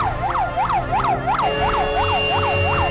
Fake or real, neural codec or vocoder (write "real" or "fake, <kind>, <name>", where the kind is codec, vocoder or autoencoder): real